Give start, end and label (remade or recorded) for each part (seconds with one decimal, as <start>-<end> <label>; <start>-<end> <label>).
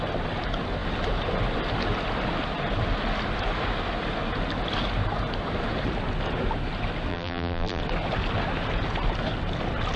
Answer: 0.0-7.1 recorded; 7.1-7.8 remade; 7.8-10.0 recorded